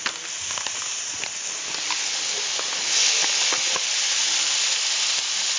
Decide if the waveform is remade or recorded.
recorded